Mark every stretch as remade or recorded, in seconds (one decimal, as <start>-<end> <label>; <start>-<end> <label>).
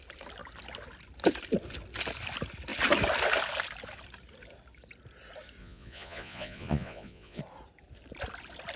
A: 0.0-5.6 recorded; 5.6-7.4 remade; 7.4-8.8 recorded